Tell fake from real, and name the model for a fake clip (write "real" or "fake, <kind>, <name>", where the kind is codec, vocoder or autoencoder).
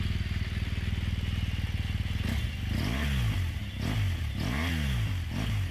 real